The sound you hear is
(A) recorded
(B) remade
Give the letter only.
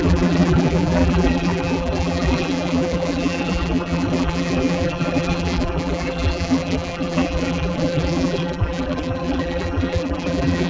B